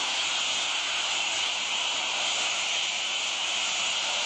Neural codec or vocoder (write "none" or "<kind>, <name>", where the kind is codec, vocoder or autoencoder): none